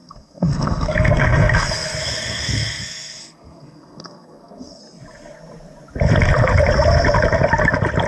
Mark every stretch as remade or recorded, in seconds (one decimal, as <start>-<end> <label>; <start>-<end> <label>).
0.0-4.8 remade; 4.8-8.1 recorded

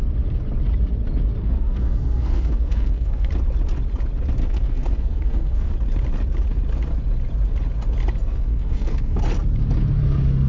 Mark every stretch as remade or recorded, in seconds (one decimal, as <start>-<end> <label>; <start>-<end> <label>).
0.0-1.4 recorded; 1.4-3.3 remade; 3.3-4.4 recorded; 4.4-5.7 remade; 5.7-8.2 recorded; 8.2-9.2 remade; 9.2-10.5 recorded

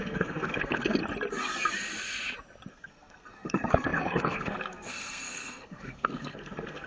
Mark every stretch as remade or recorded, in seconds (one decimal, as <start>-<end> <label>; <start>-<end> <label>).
0.0-1.0 remade; 1.0-2.7 recorded; 2.7-6.9 remade

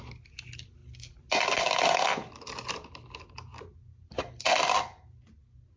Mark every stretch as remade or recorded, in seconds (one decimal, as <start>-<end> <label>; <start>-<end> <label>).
0.0-5.8 recorded

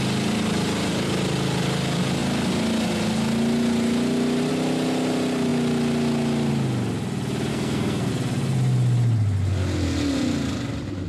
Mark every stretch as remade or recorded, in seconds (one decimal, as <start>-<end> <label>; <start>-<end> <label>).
0.0-7.5 recorded; 7.5-8.1 remade; 8.1-11.1 recorded